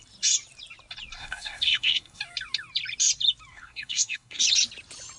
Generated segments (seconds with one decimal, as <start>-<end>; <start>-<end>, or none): 1.2-2.2; 3.5-4.4